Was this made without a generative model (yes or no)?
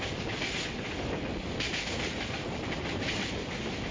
yes